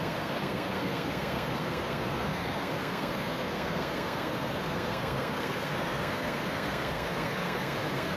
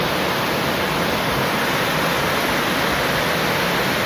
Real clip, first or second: second